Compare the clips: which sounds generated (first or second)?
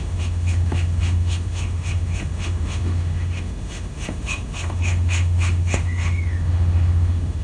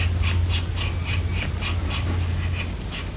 first